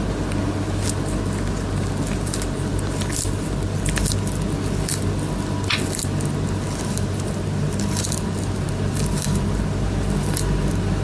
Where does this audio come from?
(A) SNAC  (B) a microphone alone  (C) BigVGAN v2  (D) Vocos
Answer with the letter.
B